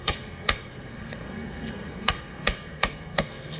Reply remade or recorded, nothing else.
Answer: remade